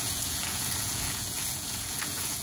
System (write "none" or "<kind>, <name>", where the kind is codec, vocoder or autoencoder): vocoder, Vocos